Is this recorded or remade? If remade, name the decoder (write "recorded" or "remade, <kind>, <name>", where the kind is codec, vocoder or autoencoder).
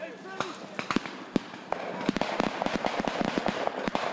recorded